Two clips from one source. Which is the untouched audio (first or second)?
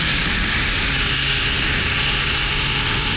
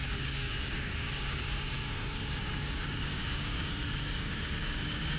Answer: first